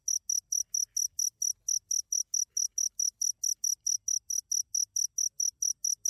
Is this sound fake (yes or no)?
no